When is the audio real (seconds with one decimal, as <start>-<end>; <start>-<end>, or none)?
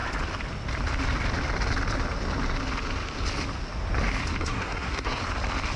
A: 0.0-4.4; 5.2-5.8